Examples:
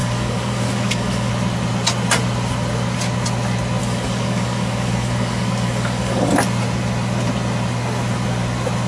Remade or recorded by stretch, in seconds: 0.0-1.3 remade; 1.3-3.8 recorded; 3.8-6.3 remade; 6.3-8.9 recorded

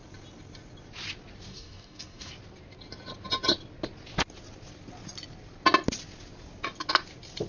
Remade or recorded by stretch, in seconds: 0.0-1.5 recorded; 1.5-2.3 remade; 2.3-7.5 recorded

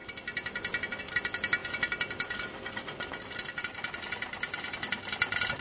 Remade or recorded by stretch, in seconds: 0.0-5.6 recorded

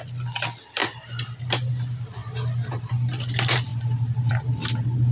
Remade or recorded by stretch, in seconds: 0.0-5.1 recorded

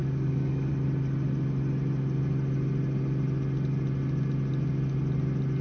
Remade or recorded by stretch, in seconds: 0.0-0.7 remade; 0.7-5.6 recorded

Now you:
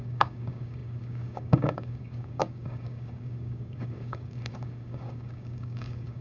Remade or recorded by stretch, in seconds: 0.0-6.2 remade

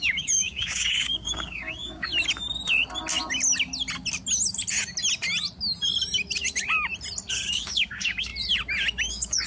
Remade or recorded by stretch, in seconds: 0.0-2.1 remade; 2.1-7.3 recorded; 7.3-8.3 remade; 8.3-9.1 recorded; 9.1-9.5 remade